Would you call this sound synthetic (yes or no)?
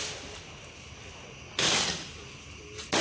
no